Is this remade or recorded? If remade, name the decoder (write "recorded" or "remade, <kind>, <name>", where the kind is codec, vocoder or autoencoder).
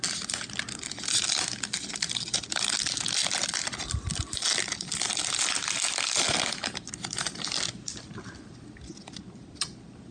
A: recorded